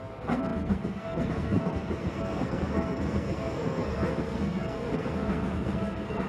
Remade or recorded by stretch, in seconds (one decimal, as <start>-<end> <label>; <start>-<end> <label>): 0.0-6.3 remade